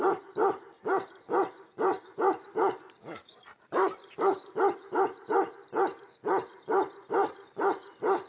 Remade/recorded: remade